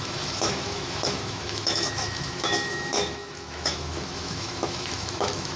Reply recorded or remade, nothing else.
remade